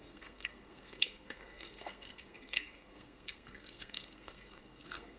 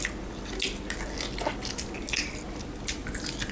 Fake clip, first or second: first